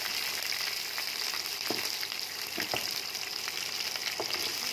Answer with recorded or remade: recorded